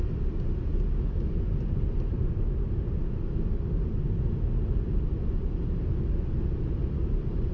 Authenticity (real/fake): real